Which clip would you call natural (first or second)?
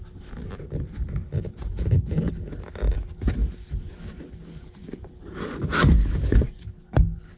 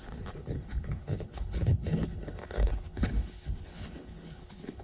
first